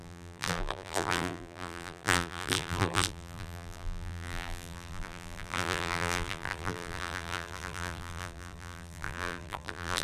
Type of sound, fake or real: fake